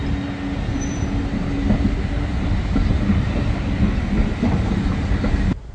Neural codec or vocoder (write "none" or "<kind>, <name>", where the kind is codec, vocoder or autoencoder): none